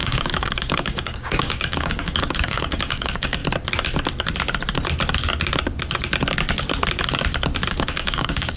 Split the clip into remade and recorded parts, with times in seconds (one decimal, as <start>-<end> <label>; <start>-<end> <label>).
0.0-3.4 remade; 3.4-7.7 recorded; 7.7-8.6 remade